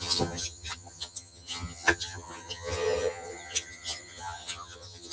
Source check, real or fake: fake